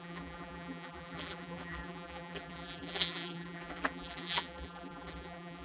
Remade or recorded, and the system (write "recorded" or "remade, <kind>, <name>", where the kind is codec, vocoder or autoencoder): remade, vocoder, BigVGAN v2